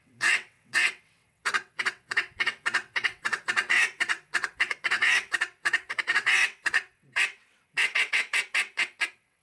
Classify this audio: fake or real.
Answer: fake